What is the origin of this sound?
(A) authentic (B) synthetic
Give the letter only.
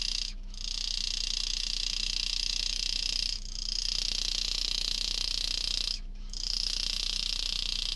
B